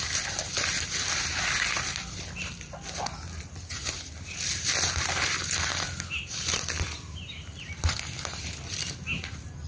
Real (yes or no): yes